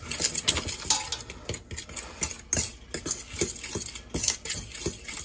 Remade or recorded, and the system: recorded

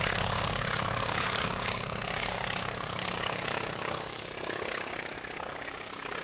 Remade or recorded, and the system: remade, codec, DAC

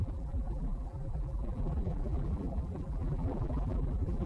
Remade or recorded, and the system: remade, vocoder, BigVGAN v2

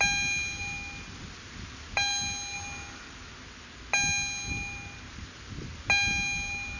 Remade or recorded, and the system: recorded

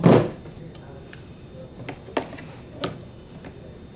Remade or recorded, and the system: recorded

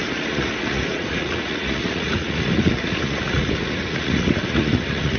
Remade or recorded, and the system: remade, vocoder, Vocos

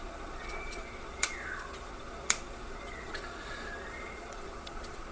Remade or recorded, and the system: remade, vocoder, Vocos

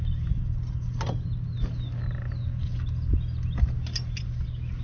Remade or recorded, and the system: recorded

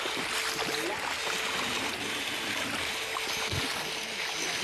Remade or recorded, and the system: recorded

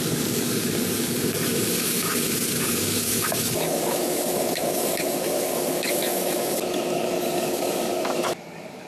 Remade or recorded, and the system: remade, codec, DAC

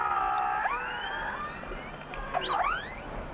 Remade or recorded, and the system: recorded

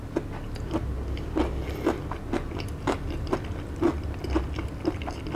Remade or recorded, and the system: recorded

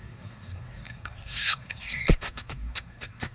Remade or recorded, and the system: remade, codec, SNAC